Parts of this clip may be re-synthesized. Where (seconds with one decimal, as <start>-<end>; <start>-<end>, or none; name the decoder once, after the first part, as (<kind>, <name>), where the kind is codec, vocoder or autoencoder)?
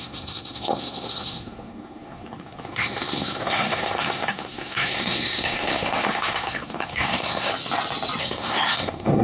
0.0-7.5 (codec, SNAC); 8.2-9.2